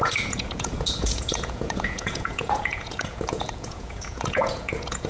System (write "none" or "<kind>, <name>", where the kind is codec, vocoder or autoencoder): vocoder, Vocos